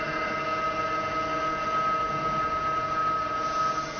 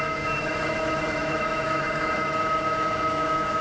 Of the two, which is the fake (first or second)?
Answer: second